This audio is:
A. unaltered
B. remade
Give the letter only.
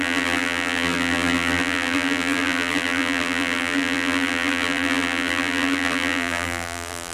B